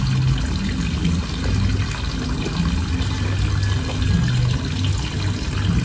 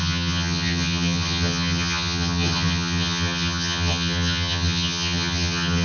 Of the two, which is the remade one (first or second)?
second